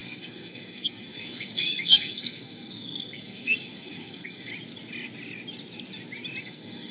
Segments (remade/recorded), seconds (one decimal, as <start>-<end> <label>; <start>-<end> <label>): 0.0-4.5 remade; 4.5-6.4 recorded; 6.4-6.9 remade